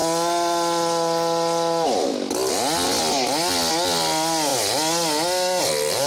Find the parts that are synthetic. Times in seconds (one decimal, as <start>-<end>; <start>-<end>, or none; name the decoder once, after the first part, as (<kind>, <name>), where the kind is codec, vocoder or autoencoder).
none